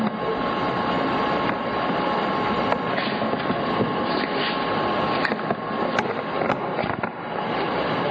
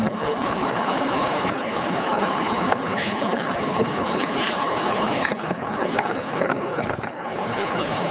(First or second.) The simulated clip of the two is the second